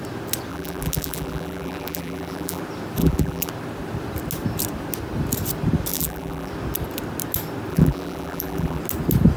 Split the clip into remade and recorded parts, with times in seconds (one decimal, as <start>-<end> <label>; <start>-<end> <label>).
0.0-0.5 recorded; 0.5-2.6 remade; 2.6-3.0 recorded; 3.0-3.5 remade; 3.5-5.9 recorded; 5.9-6.5 remade; 6.5-7.7 recorded; 7.7-8.8 remade; 8.8-9.4 recorded